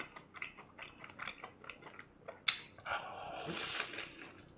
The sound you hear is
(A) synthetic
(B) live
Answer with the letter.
B